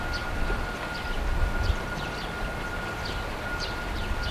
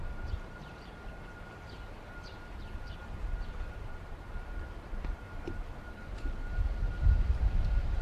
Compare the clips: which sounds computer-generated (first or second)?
second